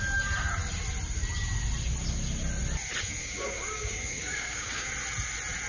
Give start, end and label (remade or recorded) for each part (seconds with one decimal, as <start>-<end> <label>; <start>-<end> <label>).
0.0-3.2 recorded; 3.2-4.9 remade; 4.9-5.7 recorded